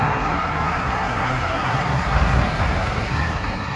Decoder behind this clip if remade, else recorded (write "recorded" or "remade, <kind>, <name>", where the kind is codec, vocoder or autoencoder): remade, codec, SNAC